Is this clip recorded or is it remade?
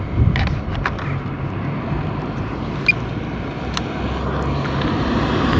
recorded